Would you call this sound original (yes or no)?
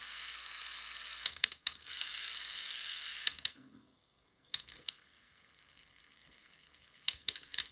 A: no